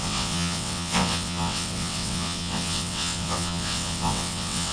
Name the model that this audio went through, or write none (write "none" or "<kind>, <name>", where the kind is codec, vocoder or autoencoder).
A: vocoder, WaveNeXt